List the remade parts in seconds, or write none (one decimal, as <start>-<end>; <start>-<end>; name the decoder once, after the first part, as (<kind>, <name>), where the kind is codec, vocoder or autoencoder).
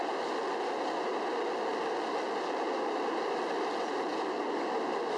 none